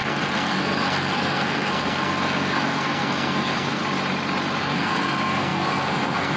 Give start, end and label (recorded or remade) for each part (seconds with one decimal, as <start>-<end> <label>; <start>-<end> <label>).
0.0-3.8 remade; 3.8-4.6 recorded; 4.6-6.4 remade